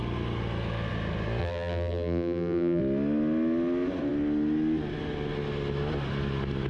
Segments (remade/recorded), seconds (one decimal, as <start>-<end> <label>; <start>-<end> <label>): 0.0-1.4 recorded; 1.4-2.8 remade; 2.8-6.7 recorded